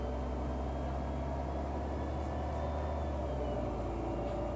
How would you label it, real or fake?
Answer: real